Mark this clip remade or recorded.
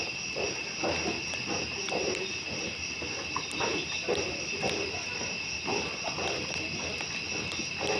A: recorded